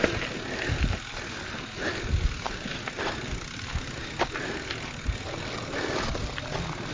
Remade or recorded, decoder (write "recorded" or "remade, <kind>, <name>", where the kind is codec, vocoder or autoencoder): recorded